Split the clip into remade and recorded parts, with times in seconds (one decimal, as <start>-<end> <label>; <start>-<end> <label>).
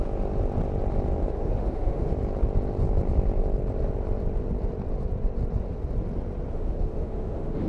0.0-1.3 recorded; 1.3-2.1 remade; 2.1-6.5 recorded; 6.5-7.7 remade